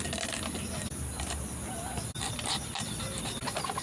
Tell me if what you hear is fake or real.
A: real